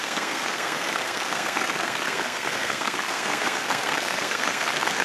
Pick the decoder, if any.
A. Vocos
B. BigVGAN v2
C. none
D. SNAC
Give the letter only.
D